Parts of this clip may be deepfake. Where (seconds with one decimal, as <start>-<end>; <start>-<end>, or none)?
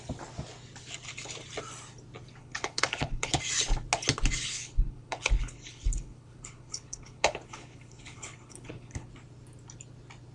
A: 2.4-3.4; 4.4-9.1